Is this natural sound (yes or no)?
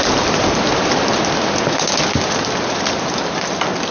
yes